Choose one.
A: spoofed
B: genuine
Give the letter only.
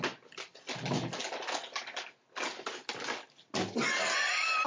B